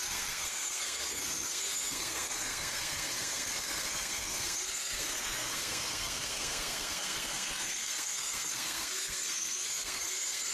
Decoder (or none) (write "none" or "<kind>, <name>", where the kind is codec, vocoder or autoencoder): codec, SNAC